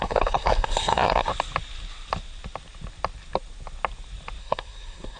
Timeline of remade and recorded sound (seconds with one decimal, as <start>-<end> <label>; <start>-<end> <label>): 0.0-1.3 remade; 1.3-4.4 recorded; 4.4-5.2 remade